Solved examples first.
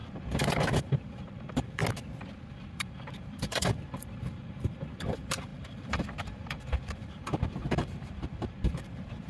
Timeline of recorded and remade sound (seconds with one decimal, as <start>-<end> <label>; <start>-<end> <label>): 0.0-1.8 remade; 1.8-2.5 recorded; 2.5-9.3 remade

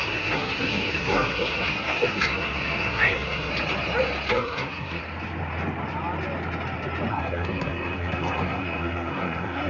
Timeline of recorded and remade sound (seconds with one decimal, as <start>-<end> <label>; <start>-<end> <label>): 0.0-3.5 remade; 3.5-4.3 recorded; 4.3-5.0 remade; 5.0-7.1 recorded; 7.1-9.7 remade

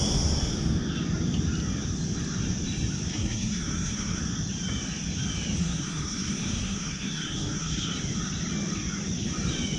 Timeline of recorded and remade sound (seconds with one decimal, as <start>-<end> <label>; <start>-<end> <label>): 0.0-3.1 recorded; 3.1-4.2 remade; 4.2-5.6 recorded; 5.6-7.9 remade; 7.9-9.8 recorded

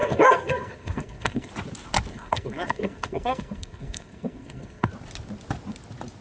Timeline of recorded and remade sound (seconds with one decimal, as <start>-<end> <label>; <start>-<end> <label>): 0.0-1.5 remade; 1.5-2.1 recorded; 2.1-4.9 remade; 4.9-6.2 recorded

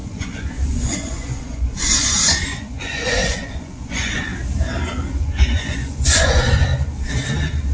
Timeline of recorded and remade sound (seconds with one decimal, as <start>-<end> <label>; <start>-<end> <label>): 0.0-4.3 remade; 4.3-5.1 recorded; 5.1-6.7 remade; 6.7-7.7 recorded

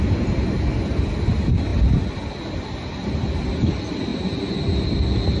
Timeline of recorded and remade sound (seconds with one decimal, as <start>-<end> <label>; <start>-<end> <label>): 0.0-5.4 recorded